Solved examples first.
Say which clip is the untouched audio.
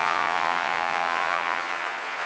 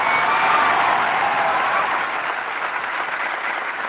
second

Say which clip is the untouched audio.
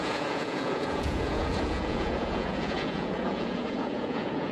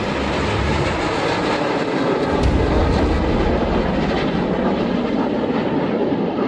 second